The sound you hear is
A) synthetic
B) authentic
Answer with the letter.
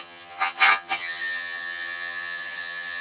A